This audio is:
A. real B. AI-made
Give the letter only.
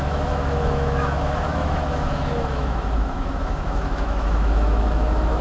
B